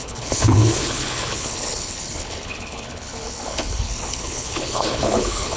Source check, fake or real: fake